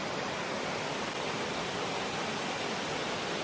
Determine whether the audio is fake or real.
real